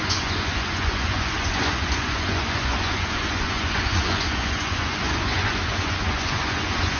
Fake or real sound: fake